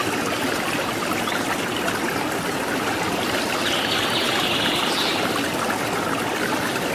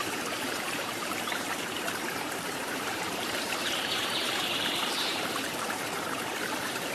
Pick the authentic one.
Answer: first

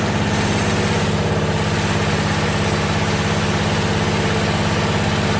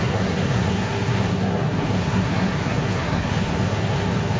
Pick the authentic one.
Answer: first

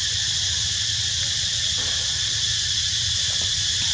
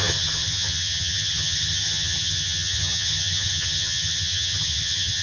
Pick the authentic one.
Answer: first